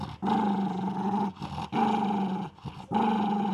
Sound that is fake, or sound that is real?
real